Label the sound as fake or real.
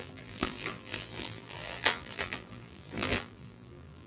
fake